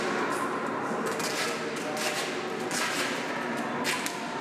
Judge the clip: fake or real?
real